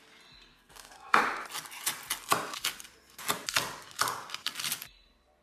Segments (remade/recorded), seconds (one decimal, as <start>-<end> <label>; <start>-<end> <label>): 0.0-0.5 recorded; 0.5-1.2 remade; 1.2-5.4 recorded